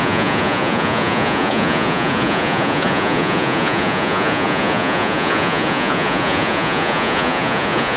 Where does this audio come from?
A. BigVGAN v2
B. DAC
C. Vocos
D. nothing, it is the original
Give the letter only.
C